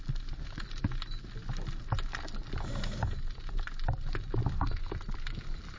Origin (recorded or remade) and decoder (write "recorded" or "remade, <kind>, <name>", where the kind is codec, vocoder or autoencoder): recorded